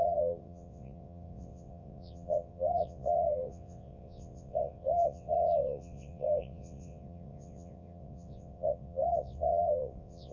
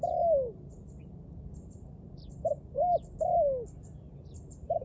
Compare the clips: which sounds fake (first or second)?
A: first